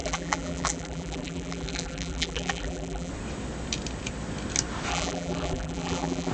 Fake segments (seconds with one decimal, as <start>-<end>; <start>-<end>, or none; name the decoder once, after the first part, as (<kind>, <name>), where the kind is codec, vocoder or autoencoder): 0.0-3.1 (vocoder, BigVGAN v2); 4.9-6.3